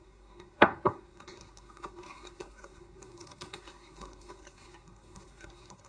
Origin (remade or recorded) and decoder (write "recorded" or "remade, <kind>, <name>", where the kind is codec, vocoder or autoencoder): remade, codec, SNAC